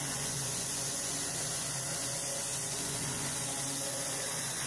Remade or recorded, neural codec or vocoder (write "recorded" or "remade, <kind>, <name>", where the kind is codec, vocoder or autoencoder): remade, vocoder, Vocos